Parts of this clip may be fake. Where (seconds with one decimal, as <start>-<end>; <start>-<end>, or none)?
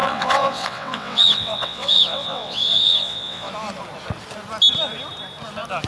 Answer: 0.0-3.5